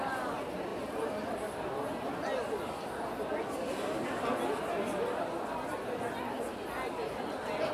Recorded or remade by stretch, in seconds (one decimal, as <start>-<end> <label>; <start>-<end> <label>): 0.0-7.7 recorded